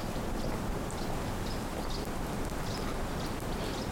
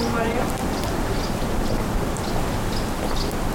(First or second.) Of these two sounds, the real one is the second